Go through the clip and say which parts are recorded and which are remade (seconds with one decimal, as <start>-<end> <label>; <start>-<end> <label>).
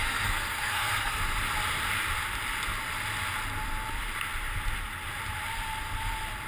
0.0-1.2 remade; 1.2-6.5 recorded